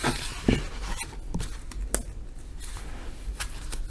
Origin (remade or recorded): recorded